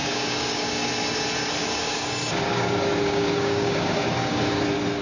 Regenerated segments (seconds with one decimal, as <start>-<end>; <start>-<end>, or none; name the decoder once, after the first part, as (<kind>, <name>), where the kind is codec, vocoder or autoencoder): 0.0-0.9 (codec, DAC); 1.6-4.6